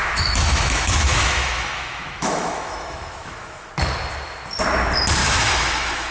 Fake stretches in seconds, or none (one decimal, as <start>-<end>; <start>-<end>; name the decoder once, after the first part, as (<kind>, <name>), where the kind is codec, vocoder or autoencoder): 0.0-3.7 (autoencoder, DAC-VAE); 5.2-6.1